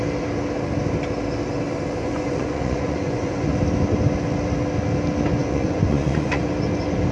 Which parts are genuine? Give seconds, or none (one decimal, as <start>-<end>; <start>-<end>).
0.0-2.0; 3.5-5.4; 6.4-7.1

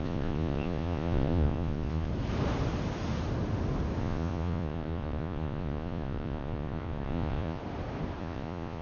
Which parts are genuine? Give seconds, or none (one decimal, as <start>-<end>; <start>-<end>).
2.1-4.0; 7.6-8.2

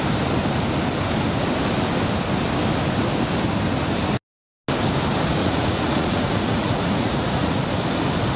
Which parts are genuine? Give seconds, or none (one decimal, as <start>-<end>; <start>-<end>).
0.0-5.4; 7.6-8.4

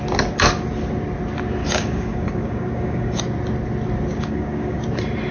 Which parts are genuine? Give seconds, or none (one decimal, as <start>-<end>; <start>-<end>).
0.0-1.6; 3.2-4.1; 4.8-5.3

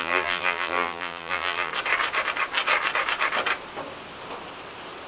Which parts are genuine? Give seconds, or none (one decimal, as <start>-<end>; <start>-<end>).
1.7-5.1